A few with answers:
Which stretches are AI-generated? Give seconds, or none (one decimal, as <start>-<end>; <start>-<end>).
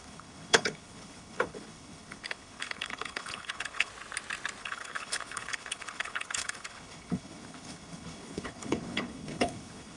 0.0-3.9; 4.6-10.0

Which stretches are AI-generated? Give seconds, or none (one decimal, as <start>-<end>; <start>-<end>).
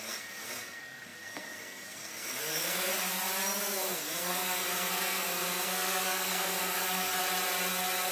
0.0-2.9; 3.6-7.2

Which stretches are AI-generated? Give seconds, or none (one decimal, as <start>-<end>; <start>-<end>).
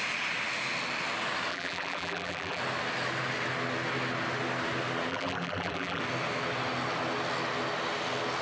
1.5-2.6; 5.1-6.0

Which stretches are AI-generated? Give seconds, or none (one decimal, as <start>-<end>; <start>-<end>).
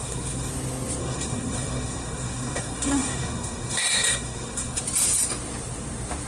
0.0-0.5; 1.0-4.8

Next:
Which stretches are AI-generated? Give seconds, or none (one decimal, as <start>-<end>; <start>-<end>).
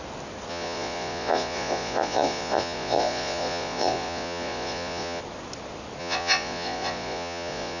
0.5-5.2; 6.0-7.8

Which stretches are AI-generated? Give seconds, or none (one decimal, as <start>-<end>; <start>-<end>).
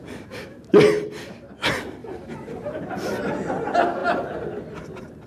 2.0-3.6